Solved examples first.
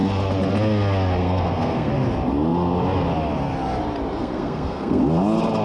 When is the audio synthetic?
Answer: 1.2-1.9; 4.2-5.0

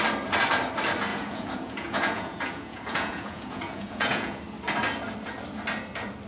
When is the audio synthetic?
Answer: 1.1-4.4

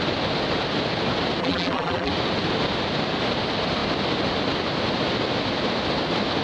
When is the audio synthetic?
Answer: 1.4-2.1

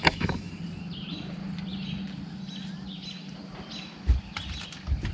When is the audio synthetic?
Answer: 0.0-0.5

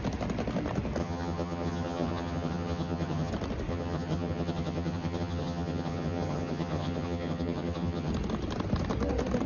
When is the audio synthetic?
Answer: 1.0-3.3; 3.7-8.1

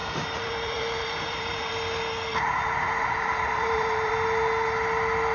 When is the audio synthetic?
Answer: 0.0-1.7; 2.3-4.1

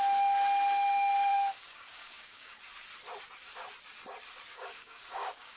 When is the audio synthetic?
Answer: 1.3-2.6; 4.5-5.6

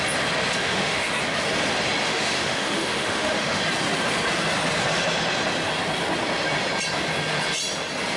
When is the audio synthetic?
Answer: 0.6-1.1; 2.0-3.6